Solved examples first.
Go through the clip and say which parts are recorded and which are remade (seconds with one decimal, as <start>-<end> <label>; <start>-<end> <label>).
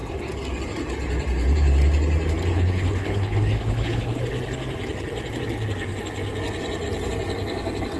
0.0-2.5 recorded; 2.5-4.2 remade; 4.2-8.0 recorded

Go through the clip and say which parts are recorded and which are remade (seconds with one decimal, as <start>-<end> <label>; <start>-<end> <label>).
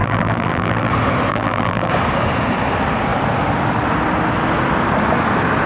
0.0-0.9 remade; 0.9-1.3 recorded; 1.3-1.9 remade; 1.9-5.7 recorded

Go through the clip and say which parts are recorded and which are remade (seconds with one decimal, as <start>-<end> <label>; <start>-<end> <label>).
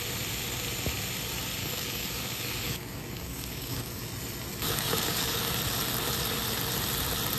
0.0-1.6 recorded; 1.6-4.1 remade; 4.1-4.5 recorded; 4.5-5.5 remade; 5.5-7.4 recorded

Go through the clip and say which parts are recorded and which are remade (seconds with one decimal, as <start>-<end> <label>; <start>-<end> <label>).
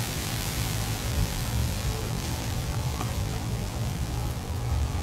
0.0-5.0 remade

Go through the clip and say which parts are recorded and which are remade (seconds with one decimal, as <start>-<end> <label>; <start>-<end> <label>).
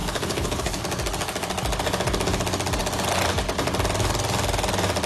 0.0-0.8 remade; 0.8-5.1 recorded